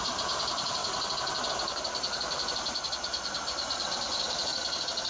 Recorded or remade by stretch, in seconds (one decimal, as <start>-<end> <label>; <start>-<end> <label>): 0.0-0.8 remade; 0.8-1.5 recorded; 1.5-4.5 remade; 4.5-5.1 recorded